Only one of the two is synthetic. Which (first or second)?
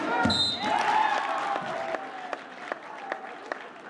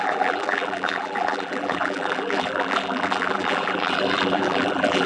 second